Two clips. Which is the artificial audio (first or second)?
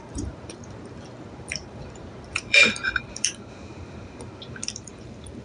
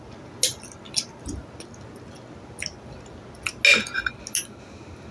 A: first